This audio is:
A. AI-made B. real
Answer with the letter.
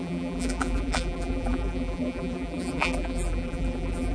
A